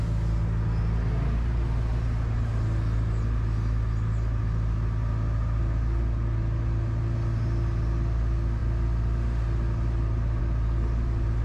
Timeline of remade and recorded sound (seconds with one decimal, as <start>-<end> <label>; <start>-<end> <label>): 0.0-11.4 recorded